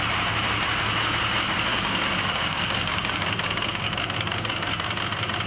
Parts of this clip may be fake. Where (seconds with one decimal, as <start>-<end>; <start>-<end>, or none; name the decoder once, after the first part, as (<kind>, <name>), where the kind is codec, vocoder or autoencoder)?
1.7-5.0 (codec, DAC)

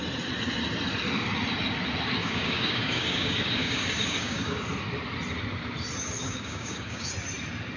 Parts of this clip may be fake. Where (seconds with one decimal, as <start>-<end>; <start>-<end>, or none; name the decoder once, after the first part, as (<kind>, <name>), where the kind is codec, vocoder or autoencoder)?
2.2-4.7 (codec, DAC); 6.2-7.1

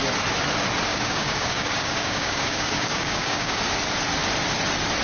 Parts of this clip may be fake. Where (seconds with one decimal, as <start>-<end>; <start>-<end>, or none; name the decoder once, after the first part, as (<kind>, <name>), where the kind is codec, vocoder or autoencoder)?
0.9-3.6 (codec, DAC)